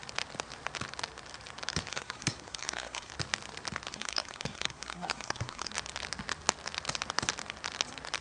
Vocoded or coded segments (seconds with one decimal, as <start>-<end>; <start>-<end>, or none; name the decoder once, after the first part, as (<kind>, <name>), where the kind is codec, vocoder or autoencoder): 1.9-3.1 (codec, SNAC); 3.9-5.7